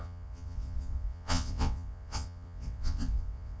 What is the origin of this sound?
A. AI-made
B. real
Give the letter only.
A